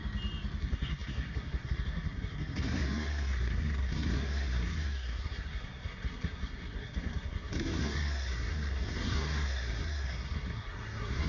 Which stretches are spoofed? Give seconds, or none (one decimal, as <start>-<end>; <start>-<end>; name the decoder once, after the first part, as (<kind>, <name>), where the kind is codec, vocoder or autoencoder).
0.6-11.3 (codec, SNAC)